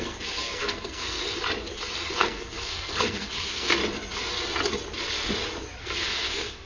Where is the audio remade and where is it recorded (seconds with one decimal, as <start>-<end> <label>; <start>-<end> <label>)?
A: 0.0-1.2 remade; 1.2-2.1 recorded; 2.1-3.8 remade; 3.8-5.8 recorded; 5.8-6.7 remade